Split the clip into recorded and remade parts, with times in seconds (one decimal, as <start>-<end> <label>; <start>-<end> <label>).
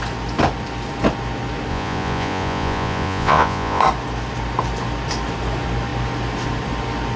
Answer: 0.0-1.7 recorded; 1.7-3.8 remade; 3.8-7.2 recorded